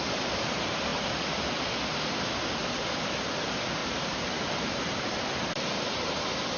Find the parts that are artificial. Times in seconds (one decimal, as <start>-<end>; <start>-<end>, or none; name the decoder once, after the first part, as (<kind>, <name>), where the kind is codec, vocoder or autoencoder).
3.8-5.4 (vocoder, BigVGAN v2)